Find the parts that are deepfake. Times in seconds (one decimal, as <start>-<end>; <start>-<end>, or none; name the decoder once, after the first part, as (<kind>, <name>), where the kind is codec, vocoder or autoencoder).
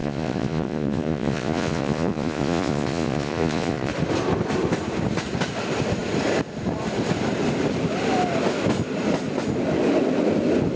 0.0-3.9 (vocoder, Vocos)